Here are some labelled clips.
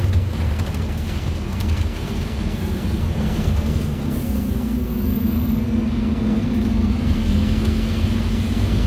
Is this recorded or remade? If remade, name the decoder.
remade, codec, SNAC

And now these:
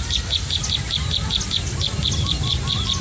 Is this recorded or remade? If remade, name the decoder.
recorded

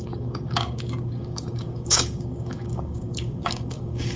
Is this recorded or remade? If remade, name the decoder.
remade, codec, DAC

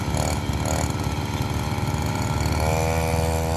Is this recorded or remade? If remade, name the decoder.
recorded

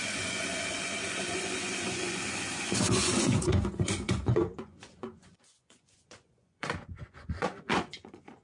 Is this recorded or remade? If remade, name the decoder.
remade, vocoder, Vocos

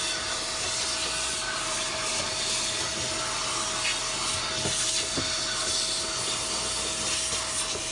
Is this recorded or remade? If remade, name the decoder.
recorded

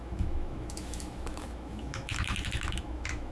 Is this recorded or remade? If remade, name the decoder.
remade, autoencoder, DAC-VAE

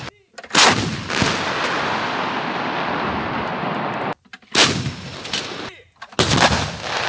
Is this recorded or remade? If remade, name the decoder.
recorded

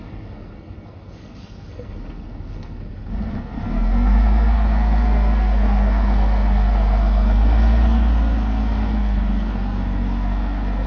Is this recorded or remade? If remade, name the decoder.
remade, codec, SNAC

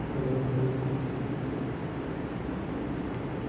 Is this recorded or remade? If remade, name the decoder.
remade, vocoder, BigVGAN v2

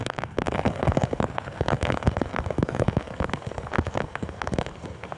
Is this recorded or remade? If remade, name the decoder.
remade, codec, SNAC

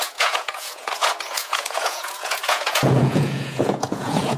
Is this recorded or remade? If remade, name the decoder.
remade, vocoder, Vocos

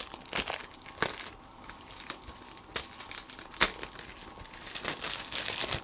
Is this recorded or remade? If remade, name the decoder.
recorded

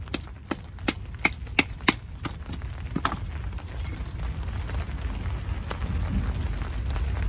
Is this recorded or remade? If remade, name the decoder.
recorded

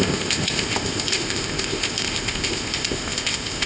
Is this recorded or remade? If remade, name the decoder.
remade, codec, ZipCodec